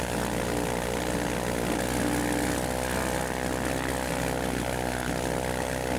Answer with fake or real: real